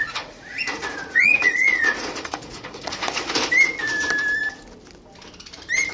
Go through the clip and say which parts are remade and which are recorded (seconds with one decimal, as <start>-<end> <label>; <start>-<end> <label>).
0.0-3.3 remade; 3.3-5.9 recorded

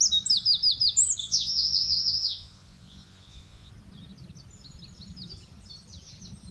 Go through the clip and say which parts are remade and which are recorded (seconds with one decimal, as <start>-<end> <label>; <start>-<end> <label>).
0.0-1.2 recorded; 1.2-3.7 remade; 3.7-6.5 recorded

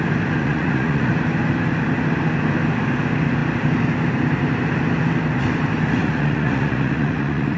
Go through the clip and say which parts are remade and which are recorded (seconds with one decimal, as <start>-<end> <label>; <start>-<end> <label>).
0.0-0.4 recorded; 0.4-1.1 remade; 1.1-6.0 recorded; 6.0-7.6 remade

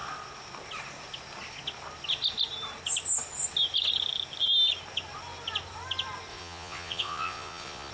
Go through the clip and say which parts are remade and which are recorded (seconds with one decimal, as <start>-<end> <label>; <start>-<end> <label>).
0.0-6.3 recorded; 6.3-7.9 remade